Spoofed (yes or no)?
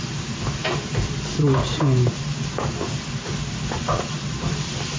yes